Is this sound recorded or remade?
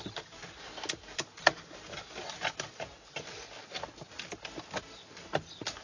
recorded